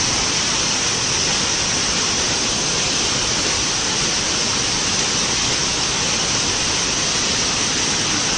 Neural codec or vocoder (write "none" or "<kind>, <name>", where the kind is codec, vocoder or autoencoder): none